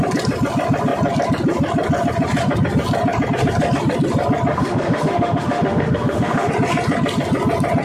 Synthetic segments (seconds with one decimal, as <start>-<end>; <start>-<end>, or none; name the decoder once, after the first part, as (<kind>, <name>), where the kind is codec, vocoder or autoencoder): 4.5-6.5 (autoencoder, DAC-VAE)